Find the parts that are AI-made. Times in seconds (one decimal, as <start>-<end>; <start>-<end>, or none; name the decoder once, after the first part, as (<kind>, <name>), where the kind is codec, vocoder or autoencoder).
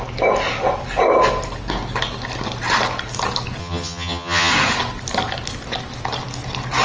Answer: 3.6-4.5 (vocoder, HiFi-GAN)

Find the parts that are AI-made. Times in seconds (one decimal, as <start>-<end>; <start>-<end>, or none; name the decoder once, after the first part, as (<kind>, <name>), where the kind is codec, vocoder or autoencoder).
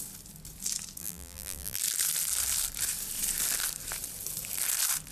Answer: 1.0-1.8 (vocoder, BigVGAN v2)